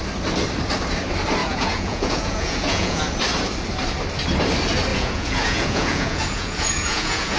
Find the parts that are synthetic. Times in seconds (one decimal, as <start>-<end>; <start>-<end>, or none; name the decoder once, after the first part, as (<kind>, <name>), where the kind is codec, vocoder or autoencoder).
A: 1.4-3.0 (vocoder, Vocos); 4.9-7.4

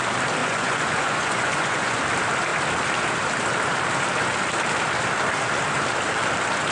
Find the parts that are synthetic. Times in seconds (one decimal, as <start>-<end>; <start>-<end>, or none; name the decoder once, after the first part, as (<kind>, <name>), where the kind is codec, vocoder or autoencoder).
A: 0.4-2.0 (vocoder, Vocos)

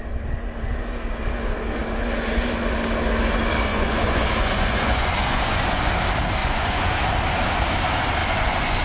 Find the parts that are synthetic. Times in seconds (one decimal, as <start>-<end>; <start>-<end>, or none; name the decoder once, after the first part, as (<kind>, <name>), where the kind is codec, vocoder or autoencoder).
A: 3.7-5.9 (vocoder, Vocos); 6.4-6.9; 8.2-8.8

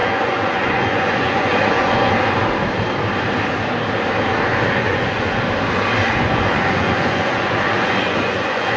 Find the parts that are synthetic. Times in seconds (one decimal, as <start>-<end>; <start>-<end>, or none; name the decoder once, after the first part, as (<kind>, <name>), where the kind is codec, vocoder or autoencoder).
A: 0.0-2.1 (vocoder, Vocos); 4.5-5.4; 6.0-8.8

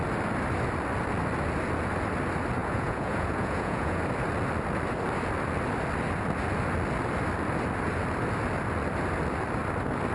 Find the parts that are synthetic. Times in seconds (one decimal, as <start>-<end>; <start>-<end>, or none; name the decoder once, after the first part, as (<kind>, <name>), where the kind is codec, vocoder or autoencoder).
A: 2.6-4.0 (vocoder, Vocos)

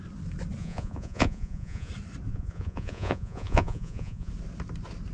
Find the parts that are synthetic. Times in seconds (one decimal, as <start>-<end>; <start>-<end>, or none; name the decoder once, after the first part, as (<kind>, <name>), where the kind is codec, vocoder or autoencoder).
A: 0.6-1.9 (vocoder, Vocos); 2.3-4.3

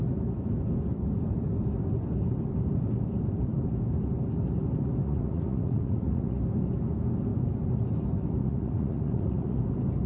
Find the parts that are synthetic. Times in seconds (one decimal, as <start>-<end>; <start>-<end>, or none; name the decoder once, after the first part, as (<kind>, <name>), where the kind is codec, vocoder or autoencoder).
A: 5.0-6.4 (vocoder, Vocos); 8.4-9.6

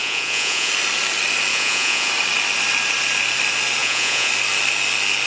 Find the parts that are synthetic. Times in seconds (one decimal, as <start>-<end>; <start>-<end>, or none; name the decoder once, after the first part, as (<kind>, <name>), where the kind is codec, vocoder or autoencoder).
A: 0.0-0.7 (vocoder, Vocos); 1.5-2.1; 3.8-4.3